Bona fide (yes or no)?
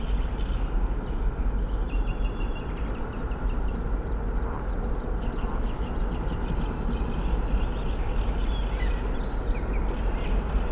yes